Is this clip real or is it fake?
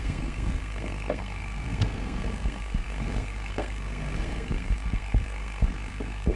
fake